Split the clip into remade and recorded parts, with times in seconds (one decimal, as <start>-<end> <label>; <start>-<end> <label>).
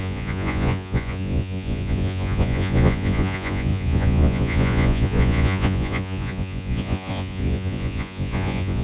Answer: 0.0-8.8 remade